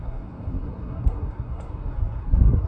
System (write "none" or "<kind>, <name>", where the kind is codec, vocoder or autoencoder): codec, SNAC